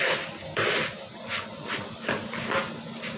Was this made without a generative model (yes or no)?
yes